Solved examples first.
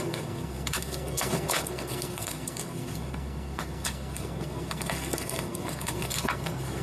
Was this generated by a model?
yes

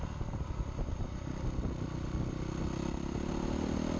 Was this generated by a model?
no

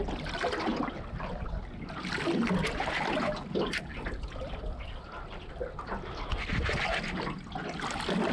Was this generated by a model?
no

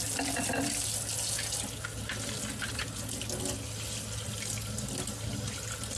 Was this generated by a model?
no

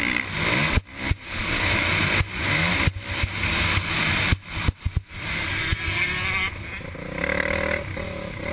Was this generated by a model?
no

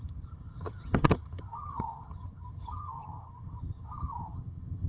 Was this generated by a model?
yes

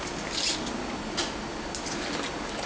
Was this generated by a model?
no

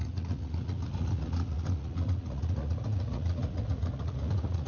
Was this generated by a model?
yes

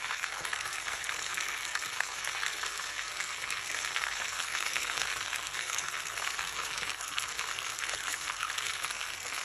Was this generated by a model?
yes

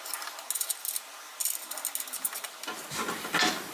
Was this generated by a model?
no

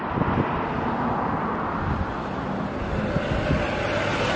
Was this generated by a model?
no